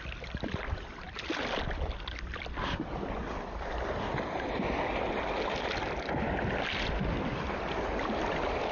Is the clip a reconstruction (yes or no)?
no